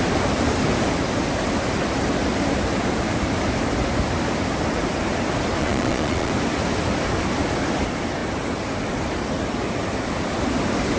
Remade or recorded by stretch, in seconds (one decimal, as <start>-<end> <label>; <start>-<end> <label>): 0.0-5.6 recorded; 5.6-6.3 remade; 6.3-11.0 recorded